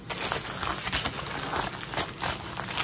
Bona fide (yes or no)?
yes